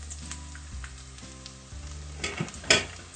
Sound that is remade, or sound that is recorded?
recorded